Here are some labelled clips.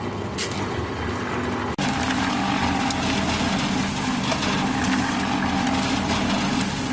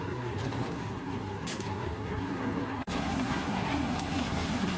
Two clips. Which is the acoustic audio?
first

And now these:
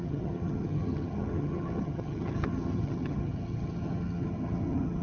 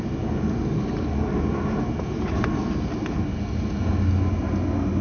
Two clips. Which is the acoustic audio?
second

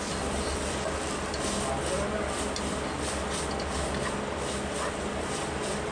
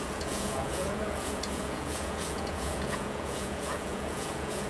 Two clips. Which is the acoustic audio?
first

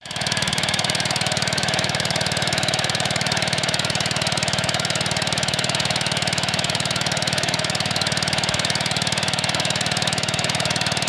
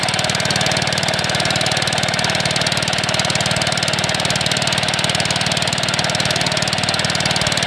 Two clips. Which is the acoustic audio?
second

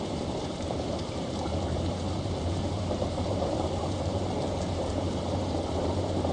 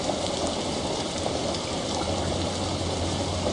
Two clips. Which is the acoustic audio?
second